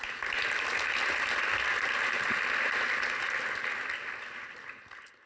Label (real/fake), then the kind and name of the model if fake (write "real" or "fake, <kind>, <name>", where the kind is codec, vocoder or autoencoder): real